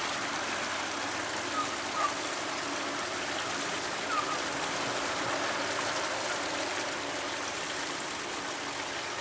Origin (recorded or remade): recorded